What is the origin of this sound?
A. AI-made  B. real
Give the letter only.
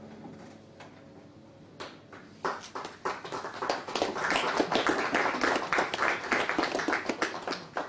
B